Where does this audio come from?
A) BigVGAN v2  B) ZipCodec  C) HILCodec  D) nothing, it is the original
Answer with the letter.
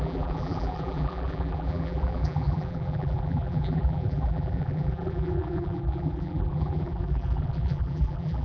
A